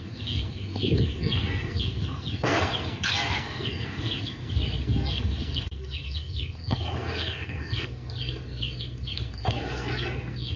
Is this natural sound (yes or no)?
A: no